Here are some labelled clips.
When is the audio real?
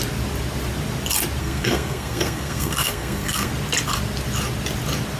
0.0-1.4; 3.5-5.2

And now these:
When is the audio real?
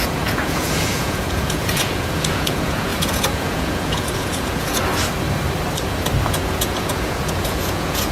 4.9-6.3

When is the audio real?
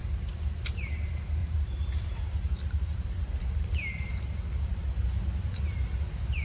0.0-1.4; 4.1-6.4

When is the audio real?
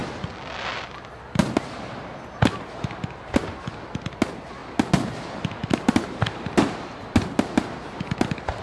0.0-5.6; 7.0-8.6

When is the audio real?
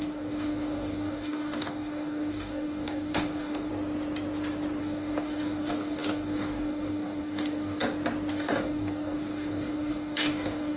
3.7-4.8; 7.8-8.3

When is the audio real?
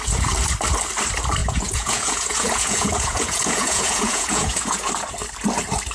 0.0-1.4; 4.9-5.9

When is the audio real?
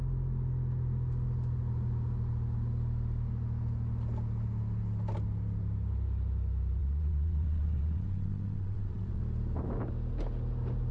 0.0-6.8; 9.2-10.9